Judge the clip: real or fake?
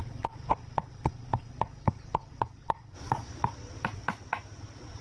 fake